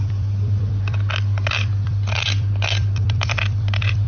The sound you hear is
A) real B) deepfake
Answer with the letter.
B